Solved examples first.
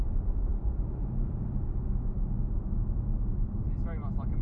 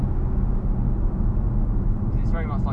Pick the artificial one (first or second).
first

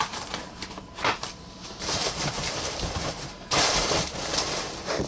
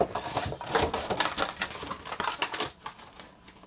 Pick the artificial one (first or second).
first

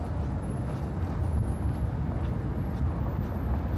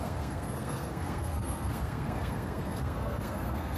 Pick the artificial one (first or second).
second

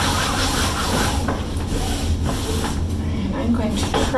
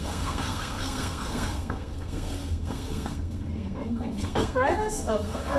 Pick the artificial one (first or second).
second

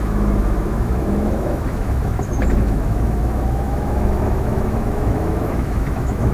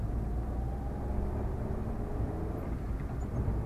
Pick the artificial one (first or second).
first